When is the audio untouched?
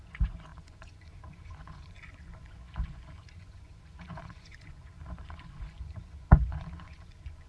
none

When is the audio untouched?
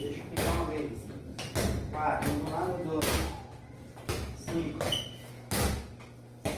0.0-6.6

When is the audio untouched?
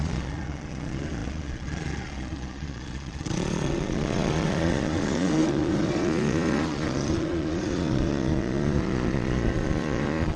none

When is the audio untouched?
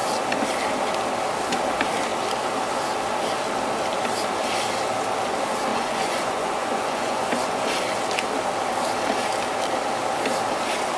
0.0-5.7; 7.6-11.0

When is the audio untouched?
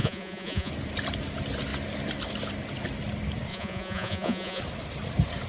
0.7-3.5; 4.6-5.5